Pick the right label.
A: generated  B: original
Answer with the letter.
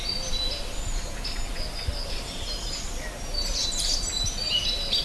B